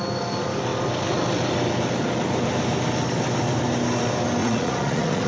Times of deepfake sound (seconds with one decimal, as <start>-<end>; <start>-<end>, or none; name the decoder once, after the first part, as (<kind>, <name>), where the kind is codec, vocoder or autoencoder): 4.4-5.3 (vocoder, Vocos)